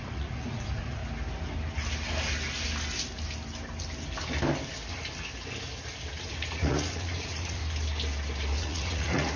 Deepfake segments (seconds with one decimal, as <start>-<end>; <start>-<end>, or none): 0.0-1.0; 6.2-7.6; 8.6-9.4